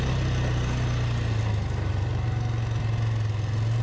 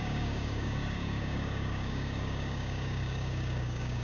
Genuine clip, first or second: first